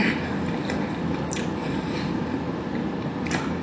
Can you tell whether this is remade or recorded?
recorded